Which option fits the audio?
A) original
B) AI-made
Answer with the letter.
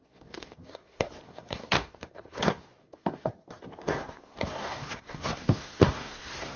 B